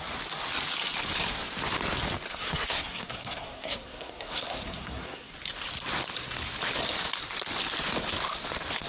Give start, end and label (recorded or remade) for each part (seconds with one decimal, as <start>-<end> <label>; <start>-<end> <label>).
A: 0.0-2.3 recorded; 2.3-5.3 remade; 5.3-8.9 recorded

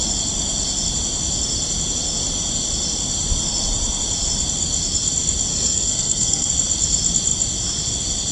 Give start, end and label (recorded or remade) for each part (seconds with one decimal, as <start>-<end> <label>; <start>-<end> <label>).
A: 0.0-5.5 recorded; 5.5-6.5 remade; 6.5-8.3 recorded

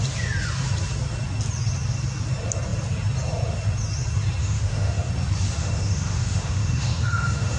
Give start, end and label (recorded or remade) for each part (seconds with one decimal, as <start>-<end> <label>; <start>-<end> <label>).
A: 0.0-4.4 recorded; 4.4-5.1 remade; 5.1-5.6 recorded; 5.6-7.6 remade

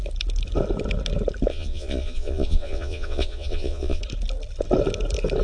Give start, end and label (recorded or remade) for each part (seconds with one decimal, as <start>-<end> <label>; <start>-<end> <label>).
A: 0.0-1.5 recorded; 1.5-4.0 remade; 4.0-5.4 recorded

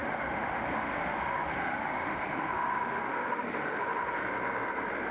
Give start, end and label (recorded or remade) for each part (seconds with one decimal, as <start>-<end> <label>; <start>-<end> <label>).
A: 0.0-4.2 remade; 4.2-5.1 recorded

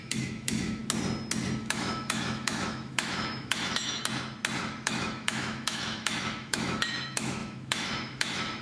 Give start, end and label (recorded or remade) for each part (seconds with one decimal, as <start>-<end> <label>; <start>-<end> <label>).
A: 0.0-0.8 remade; 0.8-1.6 recorded; 1.6-4.0 remade; 4.0-4.6 recorded; 4.6-8.6 remade